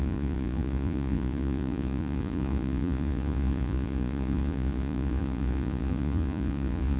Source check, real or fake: fake